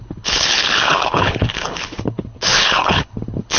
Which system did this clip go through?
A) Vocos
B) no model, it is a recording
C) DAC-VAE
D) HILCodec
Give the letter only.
D